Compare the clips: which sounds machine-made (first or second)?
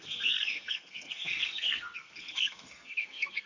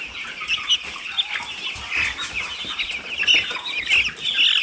first